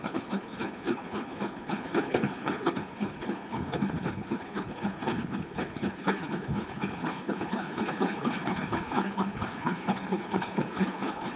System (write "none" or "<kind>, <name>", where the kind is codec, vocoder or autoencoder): codec, HILCodec